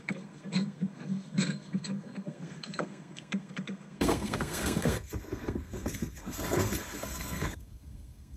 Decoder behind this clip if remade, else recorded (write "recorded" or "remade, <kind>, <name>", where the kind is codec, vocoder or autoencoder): remade, codec, SNAC